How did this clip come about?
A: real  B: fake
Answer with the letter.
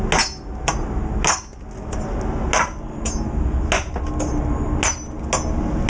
A